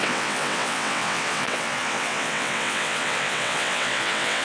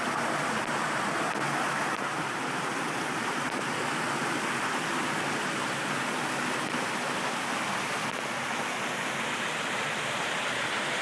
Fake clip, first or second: first